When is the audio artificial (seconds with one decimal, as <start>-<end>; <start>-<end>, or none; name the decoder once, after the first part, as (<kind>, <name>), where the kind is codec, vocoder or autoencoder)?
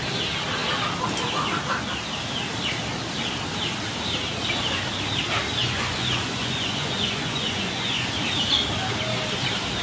5.6-8.1 (vocoder, Vocos)